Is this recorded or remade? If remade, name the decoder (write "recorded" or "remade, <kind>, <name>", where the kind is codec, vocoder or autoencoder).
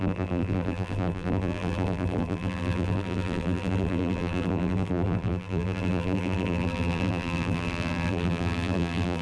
remade, vocoder, BigVGAN v2